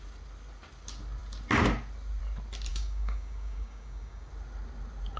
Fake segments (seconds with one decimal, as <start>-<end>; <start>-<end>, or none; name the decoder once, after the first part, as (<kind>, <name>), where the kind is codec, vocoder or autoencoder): 2.7-4.3 (codec, DAC)